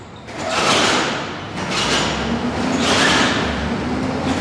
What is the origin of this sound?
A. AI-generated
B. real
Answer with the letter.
B